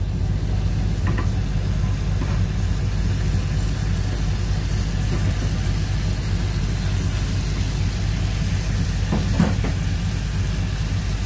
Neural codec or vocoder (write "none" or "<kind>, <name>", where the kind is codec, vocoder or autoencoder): none